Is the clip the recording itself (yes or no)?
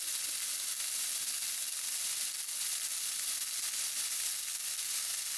yes